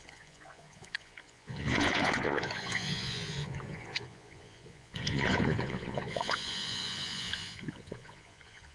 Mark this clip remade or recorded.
remade